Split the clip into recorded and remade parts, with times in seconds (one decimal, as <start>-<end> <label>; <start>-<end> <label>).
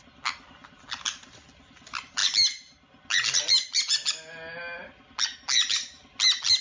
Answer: 0.0-6.6 recorded